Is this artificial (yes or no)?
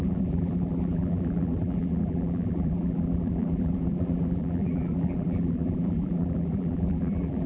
yes